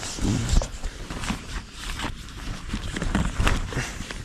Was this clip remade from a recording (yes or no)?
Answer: yes